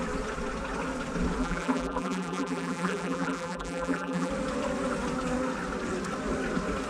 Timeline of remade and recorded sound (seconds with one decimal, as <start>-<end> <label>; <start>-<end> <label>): 0.0-1.4 recorded; 1.4-4.3 remade; 4.3-6.9 recorded